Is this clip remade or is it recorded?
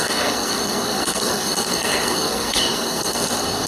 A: remade